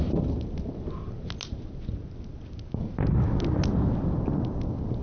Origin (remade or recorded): recorded